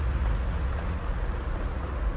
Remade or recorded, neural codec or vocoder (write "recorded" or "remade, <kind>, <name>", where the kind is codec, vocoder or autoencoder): remade, vocoder, Vocos